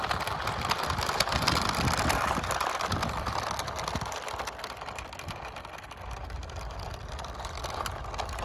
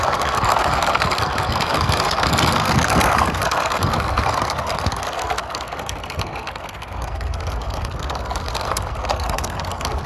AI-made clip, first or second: second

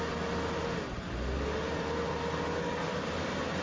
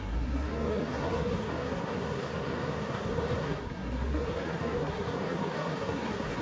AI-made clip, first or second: second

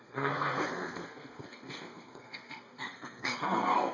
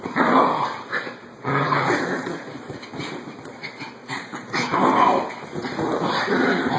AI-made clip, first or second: first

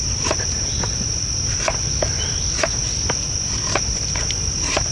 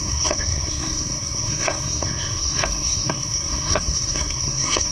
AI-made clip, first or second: second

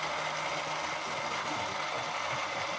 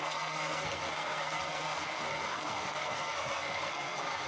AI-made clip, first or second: second